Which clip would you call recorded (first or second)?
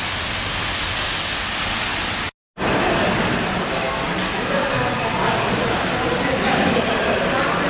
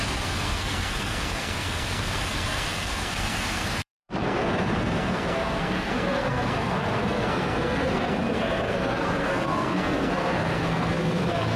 first